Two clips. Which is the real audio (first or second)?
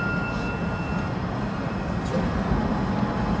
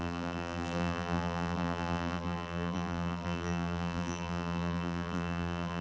first